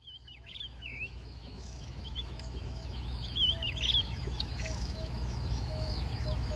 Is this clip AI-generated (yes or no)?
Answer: yes